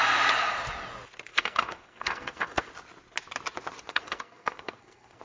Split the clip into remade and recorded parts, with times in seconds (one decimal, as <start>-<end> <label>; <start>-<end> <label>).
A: 0.0-1.3 recorded; 1.3-2.7 remade; 2.7-3.9 recorded; 3.9-5.2 remade